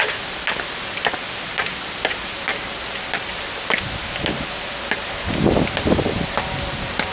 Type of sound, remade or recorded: recorded